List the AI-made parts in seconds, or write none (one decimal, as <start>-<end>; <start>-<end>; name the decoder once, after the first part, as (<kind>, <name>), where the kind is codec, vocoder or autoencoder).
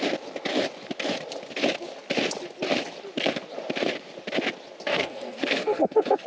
4.9-6.3 (codec, SNAC)